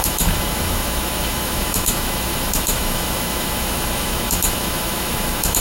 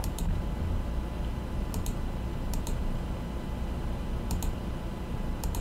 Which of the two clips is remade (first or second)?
first